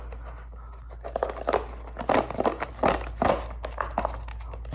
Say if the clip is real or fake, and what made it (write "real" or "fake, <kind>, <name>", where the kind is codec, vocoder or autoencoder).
real